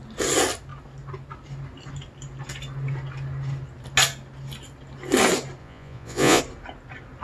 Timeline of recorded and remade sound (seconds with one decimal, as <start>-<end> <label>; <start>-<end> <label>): 0.0-5.6 recorded; 5.6-6.4 remade; 6.4-7.2 recorded